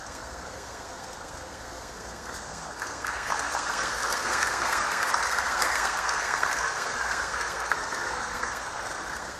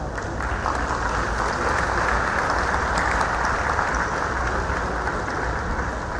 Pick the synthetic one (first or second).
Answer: first